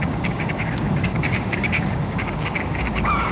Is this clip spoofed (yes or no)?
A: yes